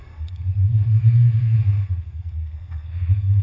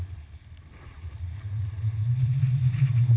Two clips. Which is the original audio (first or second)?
second